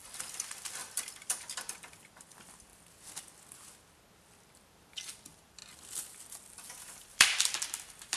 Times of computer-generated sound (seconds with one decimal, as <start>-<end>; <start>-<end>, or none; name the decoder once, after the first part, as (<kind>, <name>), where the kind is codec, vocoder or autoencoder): 0.0-2.7 (vocoder, BigVGAN v2); 5.1-5.6; 6.7-8.2